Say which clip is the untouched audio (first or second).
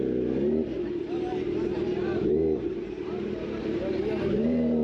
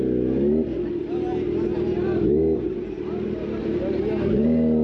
second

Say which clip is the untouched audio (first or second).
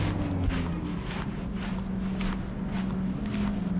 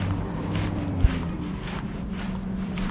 first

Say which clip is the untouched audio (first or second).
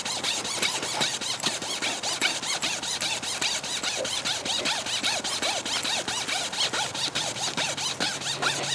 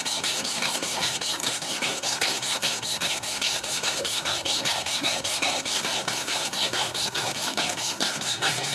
first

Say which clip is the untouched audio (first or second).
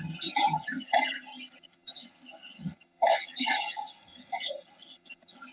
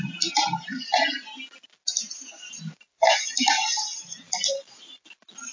second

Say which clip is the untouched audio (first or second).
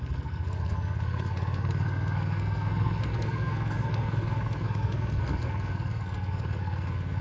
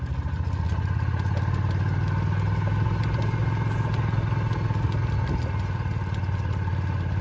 second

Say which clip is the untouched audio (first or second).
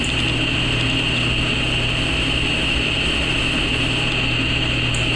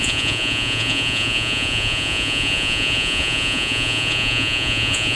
first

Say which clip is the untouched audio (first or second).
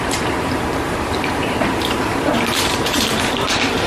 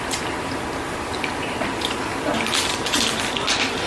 second